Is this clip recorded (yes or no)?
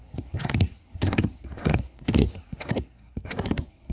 no